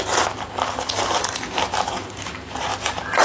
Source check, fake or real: real